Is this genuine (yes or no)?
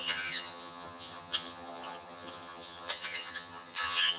no